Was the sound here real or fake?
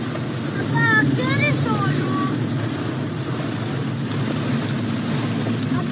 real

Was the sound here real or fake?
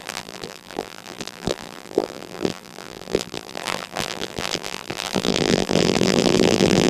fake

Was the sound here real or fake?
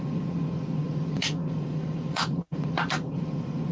fake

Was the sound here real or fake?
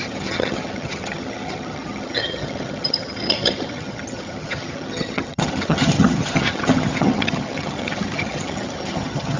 fake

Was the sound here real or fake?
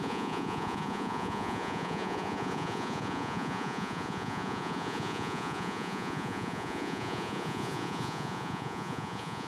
fake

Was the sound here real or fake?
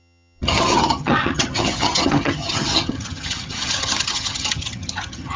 fake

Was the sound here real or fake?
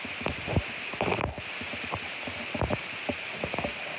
real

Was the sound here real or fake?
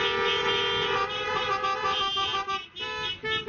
real